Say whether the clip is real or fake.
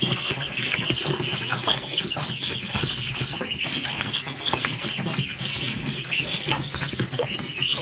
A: fake